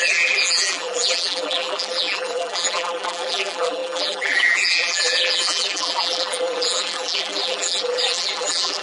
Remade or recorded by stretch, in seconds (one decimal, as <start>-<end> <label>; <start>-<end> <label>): 0.0-8.8 remade